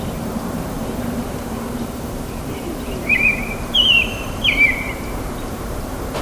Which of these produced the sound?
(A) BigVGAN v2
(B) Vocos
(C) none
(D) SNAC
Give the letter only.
A